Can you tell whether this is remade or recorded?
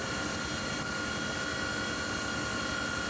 recorded